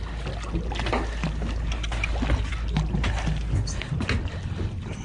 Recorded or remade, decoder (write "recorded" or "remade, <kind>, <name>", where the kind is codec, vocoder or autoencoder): recorded